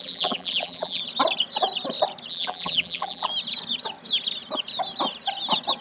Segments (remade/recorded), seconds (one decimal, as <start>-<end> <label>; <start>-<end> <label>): 0.0-1.0 remade; 1.0-2.3 recorded; 2.3-3.3 remade; 3.3-5.8 recorded